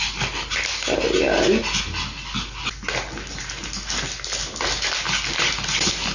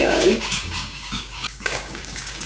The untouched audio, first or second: first